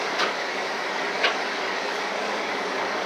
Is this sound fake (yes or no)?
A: yes